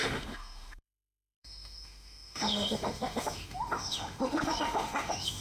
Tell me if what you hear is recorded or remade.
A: remade